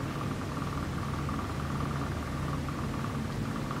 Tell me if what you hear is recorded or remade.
recorded